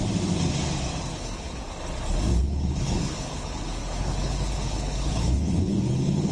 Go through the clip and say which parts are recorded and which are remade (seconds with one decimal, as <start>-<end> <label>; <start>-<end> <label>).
0.0-1.1 recorded; 1.1-1.6 remade; 1.6-2.3 recorded; 2.3-6.3 remade